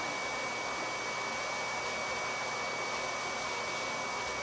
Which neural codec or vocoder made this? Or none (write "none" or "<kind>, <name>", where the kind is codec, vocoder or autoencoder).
none